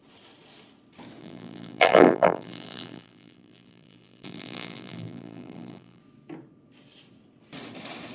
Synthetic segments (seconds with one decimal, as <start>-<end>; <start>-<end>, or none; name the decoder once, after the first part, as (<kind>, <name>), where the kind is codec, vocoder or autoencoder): 1.2-6.0 (vocoder, BigVGAN v2)